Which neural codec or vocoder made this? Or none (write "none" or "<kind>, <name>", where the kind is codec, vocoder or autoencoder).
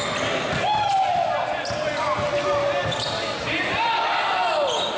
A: none